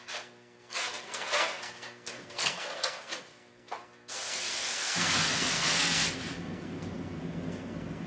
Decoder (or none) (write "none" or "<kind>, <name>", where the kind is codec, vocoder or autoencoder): codec, SNAC